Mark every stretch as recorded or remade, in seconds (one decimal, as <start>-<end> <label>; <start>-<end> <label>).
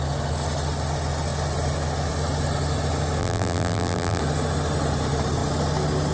0.0-3.2 recorded; 3.2-4.2 remade; 4.2-6.1 recorded